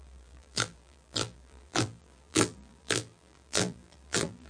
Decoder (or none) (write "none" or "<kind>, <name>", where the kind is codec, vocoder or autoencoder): vocoder, BigVGAN v2